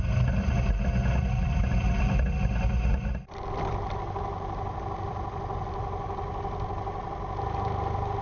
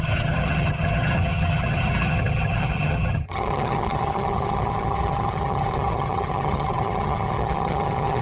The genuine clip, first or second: first